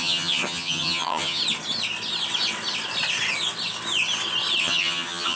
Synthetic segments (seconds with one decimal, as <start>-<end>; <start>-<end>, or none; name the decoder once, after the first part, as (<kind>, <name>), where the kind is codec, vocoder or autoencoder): 0.0-1.4 (vocoder, HiFi-GAN); 4.6-5.4